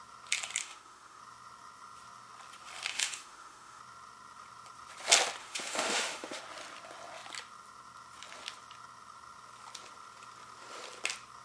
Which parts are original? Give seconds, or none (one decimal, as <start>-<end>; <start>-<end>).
0.0-0.6; 1.2-2.9; 3.8-5.4; 6.4-11.4